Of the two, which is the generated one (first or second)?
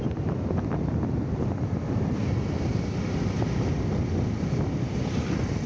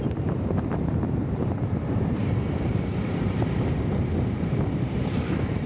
second